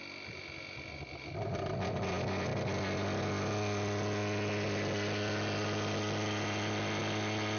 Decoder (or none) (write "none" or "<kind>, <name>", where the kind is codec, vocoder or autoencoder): none